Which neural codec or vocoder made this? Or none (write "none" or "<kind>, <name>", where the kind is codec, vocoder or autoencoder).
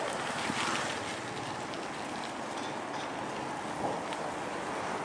none